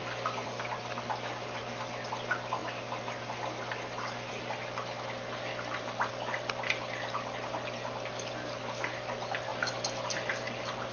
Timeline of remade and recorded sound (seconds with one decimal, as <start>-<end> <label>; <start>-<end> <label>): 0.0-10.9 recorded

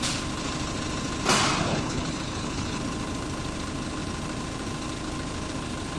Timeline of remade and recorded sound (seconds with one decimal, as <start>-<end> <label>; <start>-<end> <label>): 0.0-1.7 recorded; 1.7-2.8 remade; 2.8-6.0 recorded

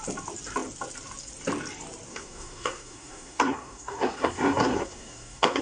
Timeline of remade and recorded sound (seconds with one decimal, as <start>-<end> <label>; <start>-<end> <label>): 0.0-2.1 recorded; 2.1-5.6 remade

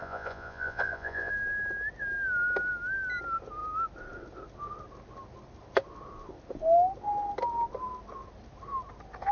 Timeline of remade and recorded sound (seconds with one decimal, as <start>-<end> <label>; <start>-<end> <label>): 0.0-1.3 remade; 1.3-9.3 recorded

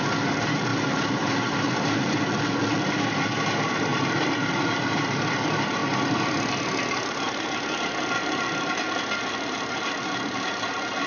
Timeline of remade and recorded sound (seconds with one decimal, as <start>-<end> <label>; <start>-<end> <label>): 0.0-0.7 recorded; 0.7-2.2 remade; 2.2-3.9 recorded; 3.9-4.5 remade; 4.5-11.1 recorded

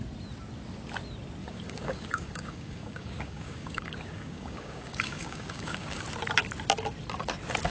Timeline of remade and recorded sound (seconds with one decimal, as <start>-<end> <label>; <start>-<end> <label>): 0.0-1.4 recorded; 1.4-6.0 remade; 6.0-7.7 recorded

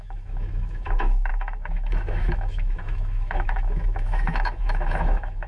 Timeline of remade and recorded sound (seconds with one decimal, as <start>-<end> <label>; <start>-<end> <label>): 0.0-5.5 remade